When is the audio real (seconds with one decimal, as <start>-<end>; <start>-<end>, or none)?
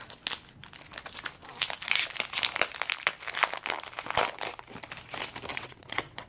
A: 0.0-5.5